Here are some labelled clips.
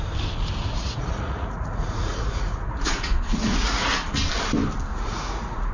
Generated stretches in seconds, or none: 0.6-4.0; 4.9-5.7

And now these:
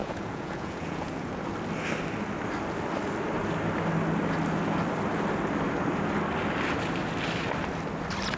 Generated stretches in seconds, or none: 0.0-1.5